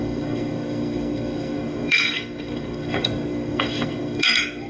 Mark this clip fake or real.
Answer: fake